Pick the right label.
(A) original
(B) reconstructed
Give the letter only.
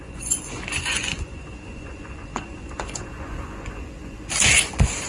B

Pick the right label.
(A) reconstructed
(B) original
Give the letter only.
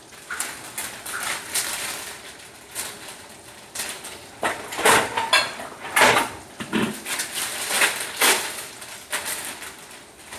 B